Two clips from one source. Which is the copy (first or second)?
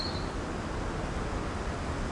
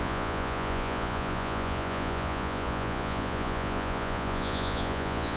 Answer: second